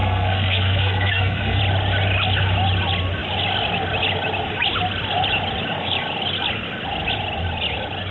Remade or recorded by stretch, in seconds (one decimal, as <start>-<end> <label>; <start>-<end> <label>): 0.0-1.6 remade; 1.6-8.1 recorded